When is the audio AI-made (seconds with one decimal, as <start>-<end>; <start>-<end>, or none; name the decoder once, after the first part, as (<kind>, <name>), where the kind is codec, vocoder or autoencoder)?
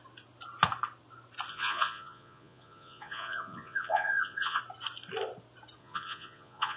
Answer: 1.5-4.6 (vocoder, Vocos); 5.8-6.8